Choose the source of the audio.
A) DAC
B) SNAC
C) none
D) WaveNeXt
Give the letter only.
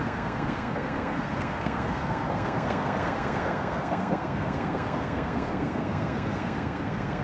B